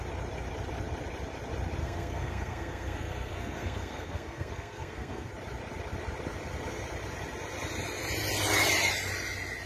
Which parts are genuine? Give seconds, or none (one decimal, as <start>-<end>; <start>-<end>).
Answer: 0.0-1.8; 5.3-9.7